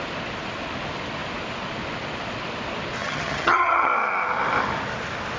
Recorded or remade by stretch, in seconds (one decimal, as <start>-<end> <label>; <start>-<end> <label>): 0.0-3.0 recorded; 3.0-3.9 remade; 3.9-5.4 recorded